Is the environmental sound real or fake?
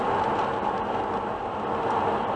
real